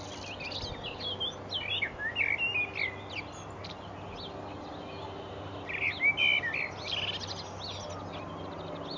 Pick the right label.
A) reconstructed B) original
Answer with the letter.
B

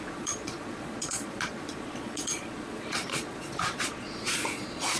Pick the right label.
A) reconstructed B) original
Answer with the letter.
A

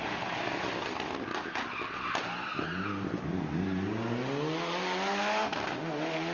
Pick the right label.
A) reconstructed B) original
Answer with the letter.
B